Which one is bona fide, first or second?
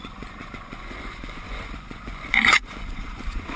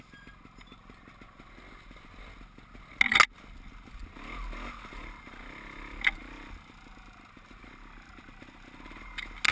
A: second